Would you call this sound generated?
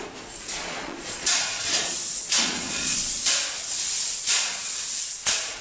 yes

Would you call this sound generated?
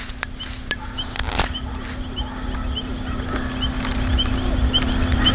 no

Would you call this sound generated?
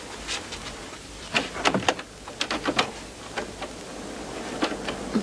yes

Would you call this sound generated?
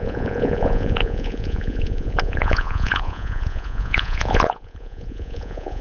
yes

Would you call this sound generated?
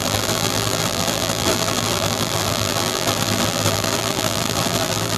yes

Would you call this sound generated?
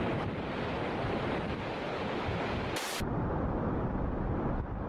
no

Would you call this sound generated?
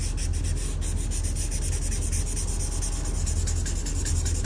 no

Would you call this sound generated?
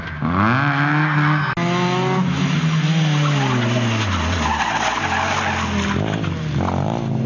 no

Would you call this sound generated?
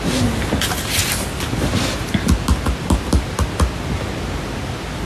no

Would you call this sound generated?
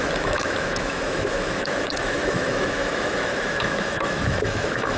yes